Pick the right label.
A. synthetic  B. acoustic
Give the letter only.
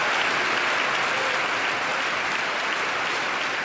B